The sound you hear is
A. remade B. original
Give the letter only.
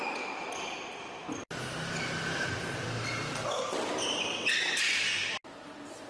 B